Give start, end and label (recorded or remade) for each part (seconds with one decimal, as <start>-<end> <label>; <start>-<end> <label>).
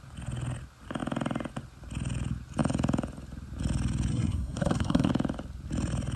0.0-4.1 recorded; 4.1-5.1 remade; 5.1-6.2 recorded